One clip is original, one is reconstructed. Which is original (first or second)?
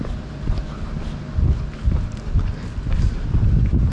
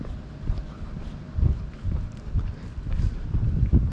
first